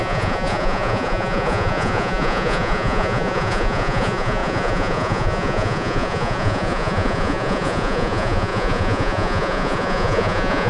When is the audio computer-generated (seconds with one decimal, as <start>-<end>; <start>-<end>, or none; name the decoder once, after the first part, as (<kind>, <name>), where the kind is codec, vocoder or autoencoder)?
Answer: 0.0-10.7 (vocoder, Vocos)